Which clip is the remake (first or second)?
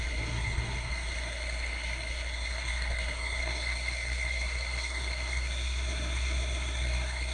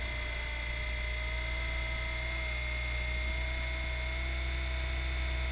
first